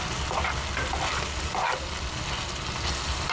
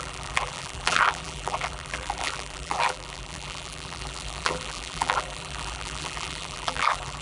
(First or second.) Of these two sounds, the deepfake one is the second